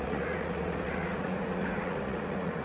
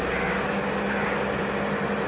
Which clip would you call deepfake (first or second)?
first